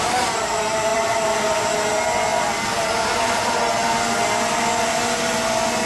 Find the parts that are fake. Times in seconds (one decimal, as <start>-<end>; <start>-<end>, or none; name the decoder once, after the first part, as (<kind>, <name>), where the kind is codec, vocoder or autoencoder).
0.9-1.6 (vocoder, BigVGAN v2); 2.3-3.6